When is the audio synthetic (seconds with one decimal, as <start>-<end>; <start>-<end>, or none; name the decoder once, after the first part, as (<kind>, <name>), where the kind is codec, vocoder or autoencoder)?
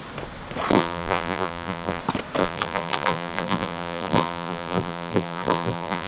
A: 0.7-2.0 (vocoder, BigVGAN v2); 2.4-6.1